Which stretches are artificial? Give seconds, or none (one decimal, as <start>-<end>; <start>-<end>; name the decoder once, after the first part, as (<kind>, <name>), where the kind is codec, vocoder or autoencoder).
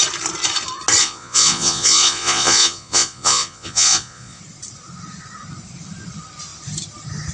1.0-4.4 (vocoder, Vocos)